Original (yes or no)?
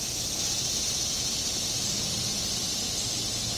yes